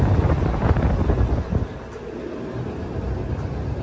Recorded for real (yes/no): yes